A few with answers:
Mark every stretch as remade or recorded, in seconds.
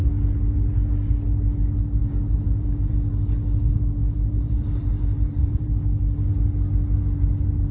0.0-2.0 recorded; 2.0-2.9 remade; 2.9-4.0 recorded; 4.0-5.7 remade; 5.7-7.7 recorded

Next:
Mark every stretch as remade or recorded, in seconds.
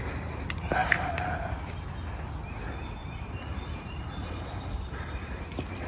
0.0-3.0 recorded; 3.0-4.9 remade; 4.9-5.9 recorded